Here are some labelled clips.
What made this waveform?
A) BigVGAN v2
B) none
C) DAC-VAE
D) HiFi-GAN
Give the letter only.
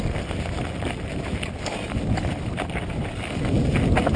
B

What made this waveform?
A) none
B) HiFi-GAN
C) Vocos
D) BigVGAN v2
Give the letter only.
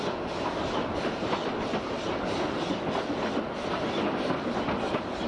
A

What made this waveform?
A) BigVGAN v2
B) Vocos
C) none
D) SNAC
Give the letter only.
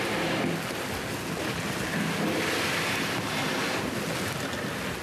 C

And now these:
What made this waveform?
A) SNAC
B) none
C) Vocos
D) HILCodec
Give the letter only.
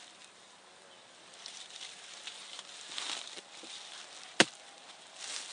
B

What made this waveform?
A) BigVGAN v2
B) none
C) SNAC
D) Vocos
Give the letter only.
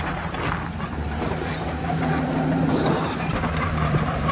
A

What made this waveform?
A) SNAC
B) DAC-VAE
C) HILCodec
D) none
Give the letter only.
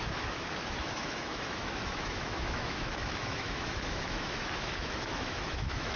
B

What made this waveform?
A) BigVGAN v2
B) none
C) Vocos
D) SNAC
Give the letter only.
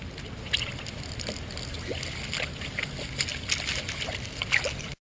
B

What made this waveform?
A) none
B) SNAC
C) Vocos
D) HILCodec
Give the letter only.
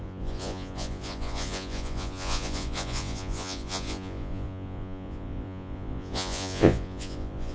C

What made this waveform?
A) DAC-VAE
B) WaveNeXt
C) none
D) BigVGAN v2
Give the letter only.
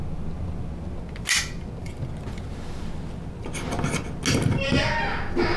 C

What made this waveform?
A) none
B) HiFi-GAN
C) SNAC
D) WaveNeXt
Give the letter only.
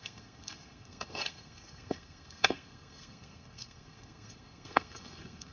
C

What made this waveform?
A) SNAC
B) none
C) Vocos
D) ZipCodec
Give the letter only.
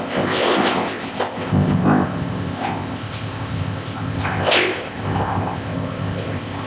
D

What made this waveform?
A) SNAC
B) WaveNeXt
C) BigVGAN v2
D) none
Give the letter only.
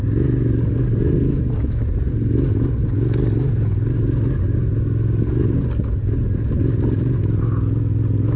D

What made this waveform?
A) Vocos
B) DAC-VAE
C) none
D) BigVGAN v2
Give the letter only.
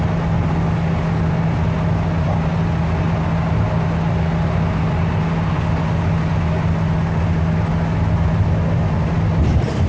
C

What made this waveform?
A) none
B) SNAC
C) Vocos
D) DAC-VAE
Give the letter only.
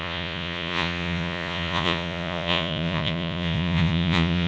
C